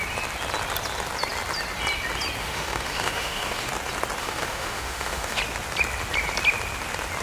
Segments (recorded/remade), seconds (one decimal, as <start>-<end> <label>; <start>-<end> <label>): 0.0-2.4 recorded; 2.4-3.7 remade; 3.7-4.2 recorded; 4.2-5.4 remade; 5.4-7.2 recorded